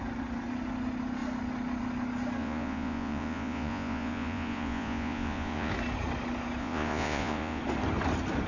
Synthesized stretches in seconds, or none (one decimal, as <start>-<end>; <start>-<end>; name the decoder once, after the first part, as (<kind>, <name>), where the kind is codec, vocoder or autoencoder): 2.4-5.7 (vocoder, Vocos); 6.6-7.6